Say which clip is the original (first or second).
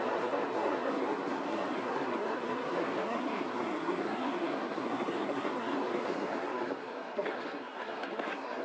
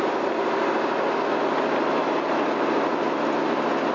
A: second